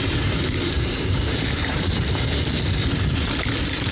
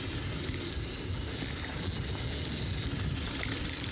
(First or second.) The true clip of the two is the second